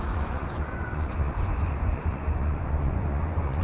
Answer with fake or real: fake